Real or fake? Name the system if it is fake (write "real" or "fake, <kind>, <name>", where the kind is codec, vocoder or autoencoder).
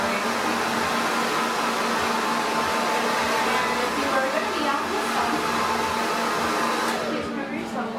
real